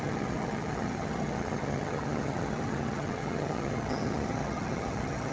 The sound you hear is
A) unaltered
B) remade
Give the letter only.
B